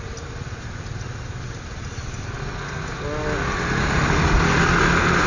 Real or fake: real